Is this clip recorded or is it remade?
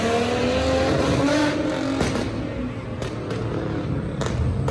recorded